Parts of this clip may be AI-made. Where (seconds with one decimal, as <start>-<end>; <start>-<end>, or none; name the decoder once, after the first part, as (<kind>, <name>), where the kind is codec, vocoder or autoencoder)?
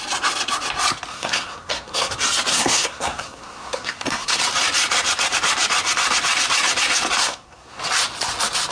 1.1-2.1 (codec, SNAC); 2.5-4.4; 7.2-7.8